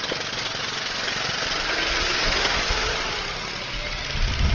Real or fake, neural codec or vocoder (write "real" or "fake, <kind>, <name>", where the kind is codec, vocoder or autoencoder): real